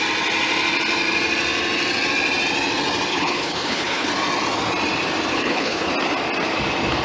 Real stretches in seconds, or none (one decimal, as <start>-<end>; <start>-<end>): 0.0-3.1; 4.1-5.3; 5.9-7.0